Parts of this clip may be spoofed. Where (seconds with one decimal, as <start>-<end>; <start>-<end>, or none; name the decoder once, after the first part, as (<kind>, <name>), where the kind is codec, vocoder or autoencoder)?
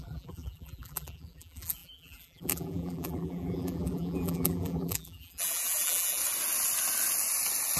0.0-6.2 (vocoder, BigVGAN v2)